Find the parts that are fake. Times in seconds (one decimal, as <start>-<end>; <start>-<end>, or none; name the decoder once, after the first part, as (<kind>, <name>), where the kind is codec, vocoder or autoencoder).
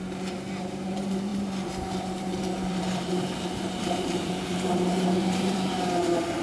0.0-6.4 (vocoder, BigVGAN v2)